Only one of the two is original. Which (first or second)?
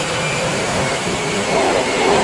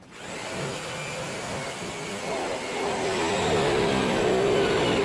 second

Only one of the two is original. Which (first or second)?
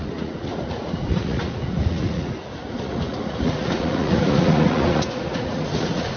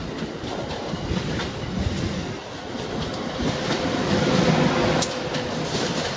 second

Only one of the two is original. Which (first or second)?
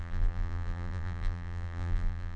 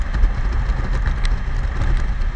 second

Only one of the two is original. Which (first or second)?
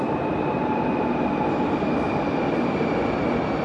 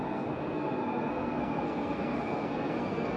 first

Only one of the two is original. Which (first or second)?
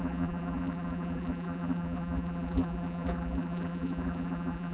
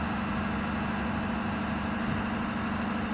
second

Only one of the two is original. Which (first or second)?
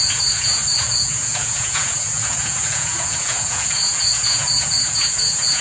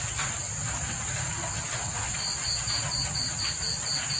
second